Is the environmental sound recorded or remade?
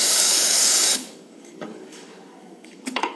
remade